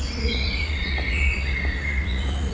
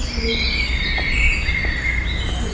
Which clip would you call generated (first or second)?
first